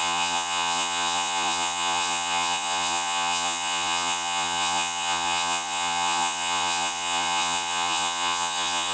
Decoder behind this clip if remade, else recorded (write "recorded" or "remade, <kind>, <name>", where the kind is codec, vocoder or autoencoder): remade, vocoder, Vocos